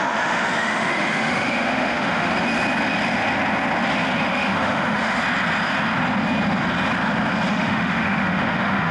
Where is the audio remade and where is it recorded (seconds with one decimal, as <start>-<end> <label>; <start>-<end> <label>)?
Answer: 0.0-2.3 remade; 2.3-4.3 recorded; 4.3-5.2 remade; 5.2-7.5 recorded; 7.5-8.9 remade